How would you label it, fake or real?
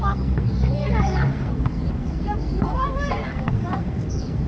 fake